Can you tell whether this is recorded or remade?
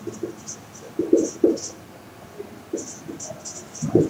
recorded